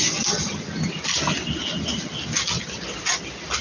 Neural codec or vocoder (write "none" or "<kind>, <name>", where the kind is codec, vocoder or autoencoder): none